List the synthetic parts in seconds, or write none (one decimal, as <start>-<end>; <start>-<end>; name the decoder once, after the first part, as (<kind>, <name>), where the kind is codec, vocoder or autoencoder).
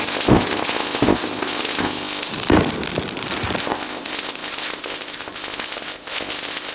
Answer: 0.0-2.3 (codec, ZipCodec); 3.6-6.7